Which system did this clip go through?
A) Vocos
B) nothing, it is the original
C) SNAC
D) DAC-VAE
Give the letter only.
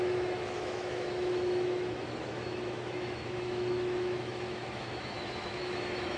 D